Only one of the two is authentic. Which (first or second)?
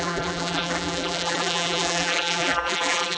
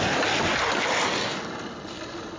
second